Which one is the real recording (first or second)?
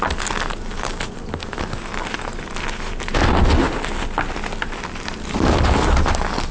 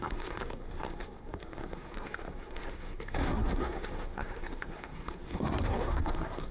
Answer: first